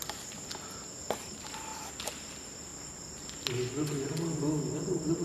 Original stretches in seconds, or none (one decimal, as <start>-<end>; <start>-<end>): 0.0-5.2